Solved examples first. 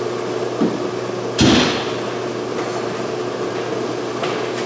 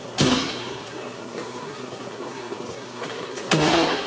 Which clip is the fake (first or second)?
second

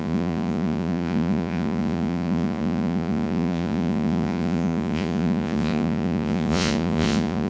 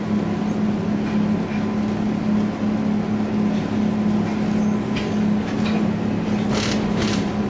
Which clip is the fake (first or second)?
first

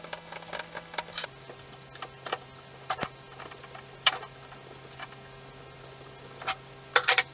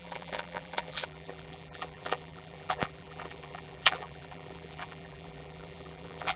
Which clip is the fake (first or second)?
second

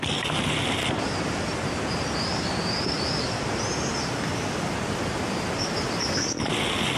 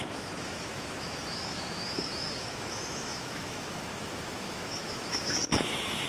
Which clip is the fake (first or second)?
second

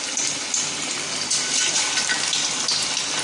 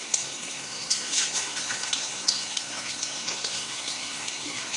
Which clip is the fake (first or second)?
second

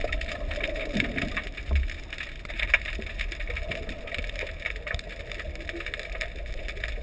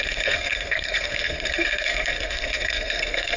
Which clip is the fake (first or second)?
second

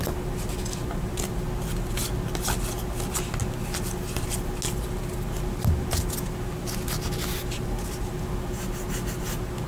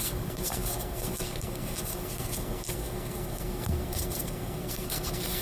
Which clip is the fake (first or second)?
second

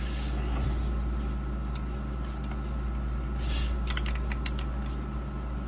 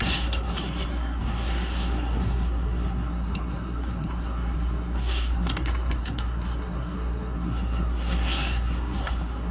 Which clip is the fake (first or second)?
second